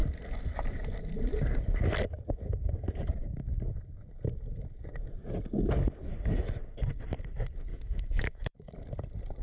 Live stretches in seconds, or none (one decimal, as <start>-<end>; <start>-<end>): 0.0-7.7; 8.7-9.4